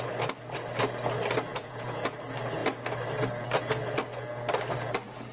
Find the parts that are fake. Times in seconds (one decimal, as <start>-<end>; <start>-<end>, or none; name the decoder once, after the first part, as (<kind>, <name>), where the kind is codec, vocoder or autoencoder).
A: 1.5-2.1 (vocoder, Vocos)